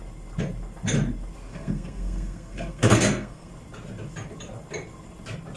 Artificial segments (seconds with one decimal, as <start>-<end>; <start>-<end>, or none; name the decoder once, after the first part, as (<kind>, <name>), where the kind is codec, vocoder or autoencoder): 1.5-3.5 (codec, SNAC)